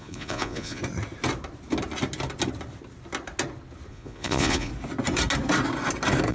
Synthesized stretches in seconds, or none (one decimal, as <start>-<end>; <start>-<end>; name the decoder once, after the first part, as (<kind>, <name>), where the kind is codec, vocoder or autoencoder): 0.0-0.8 (vocoder, Vocos); 3.9-4.7